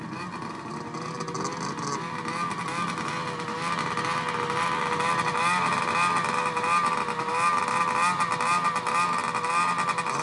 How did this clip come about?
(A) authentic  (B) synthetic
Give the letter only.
A